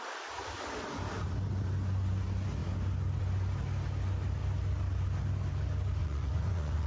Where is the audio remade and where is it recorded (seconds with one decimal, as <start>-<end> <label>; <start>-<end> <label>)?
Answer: 0.0-6.0 recorded; 6.0-6.9 remade